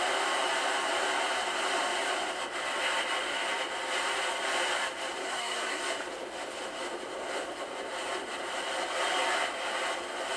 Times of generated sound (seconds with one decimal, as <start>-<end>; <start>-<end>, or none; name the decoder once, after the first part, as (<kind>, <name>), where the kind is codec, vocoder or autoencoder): 5.2-5.8 (codec, SNAC)